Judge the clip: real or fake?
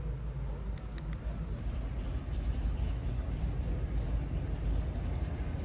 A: real